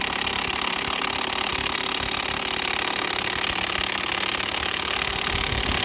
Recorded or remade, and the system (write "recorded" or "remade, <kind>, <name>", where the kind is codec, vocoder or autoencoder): recorded